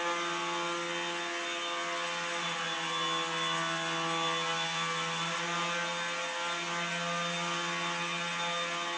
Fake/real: real